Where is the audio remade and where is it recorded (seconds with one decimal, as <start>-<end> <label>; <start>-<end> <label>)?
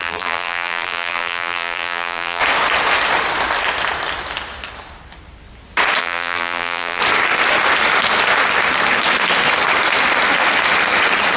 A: 0.0-2.4 remade; 2.4-6.0 recorded; 6.0-7.0 remade; 7.0-11.4 recorded